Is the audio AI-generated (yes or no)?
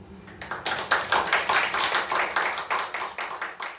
no